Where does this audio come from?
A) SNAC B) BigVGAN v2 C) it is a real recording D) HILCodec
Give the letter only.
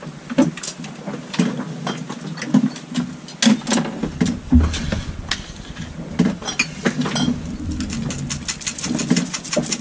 C